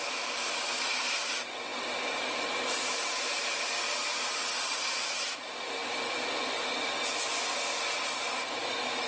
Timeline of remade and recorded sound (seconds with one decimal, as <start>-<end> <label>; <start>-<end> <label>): 0.0-9.1 recorded